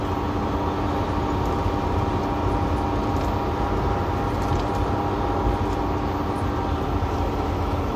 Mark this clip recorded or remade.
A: recorded